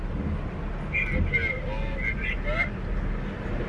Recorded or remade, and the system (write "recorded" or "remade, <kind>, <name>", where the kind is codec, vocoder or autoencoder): recorded